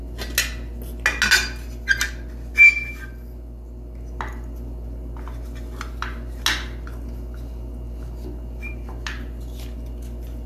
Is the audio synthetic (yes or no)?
no